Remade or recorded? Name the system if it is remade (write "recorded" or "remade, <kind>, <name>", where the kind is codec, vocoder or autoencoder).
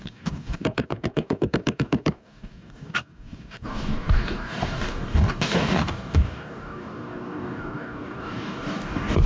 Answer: remade, codec, DAC